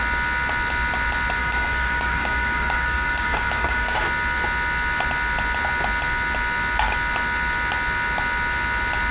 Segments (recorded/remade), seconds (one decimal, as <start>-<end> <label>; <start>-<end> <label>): 0.0-1.4 recorded; 1.4-4.0 remade; 4.0-9.1 recorded